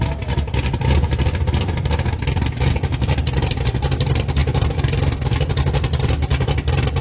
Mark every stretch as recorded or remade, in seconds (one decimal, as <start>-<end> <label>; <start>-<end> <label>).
0.0-7.0 recorded